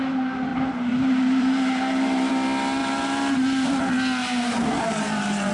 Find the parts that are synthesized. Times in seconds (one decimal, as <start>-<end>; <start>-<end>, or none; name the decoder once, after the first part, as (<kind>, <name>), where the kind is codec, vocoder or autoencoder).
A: 0.5-2.3 (vocoder, BigVGAN v2); 2.8-3.8; 4.2-5.5